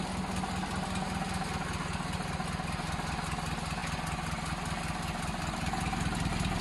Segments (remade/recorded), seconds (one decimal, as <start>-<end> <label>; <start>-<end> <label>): 0.0-6.6 recorded